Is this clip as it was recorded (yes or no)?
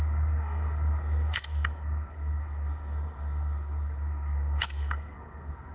no